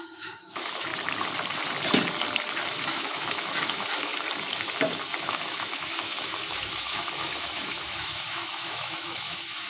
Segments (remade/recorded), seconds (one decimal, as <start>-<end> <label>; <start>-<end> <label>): 0.0-0.9 remade; 0.9-2.7 recorded; 2.7-4.1 remade; 4.1-5.2 recorded; 5.2-9.7 remade